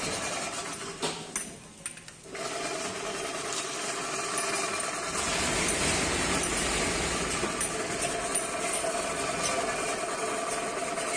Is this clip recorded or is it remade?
recorded